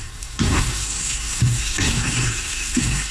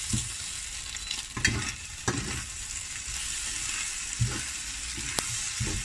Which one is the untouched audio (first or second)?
second